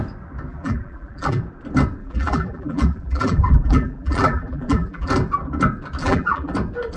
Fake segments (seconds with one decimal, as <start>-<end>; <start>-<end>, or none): 0.5-1.4; 2.0-5.1; 6.0-6.5